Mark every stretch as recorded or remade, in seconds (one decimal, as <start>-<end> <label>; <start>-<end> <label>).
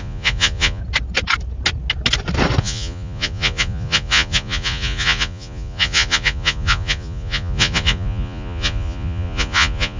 0.0-0.8 remade; 0.8-2.6 recorded; 2.6-10.0 remade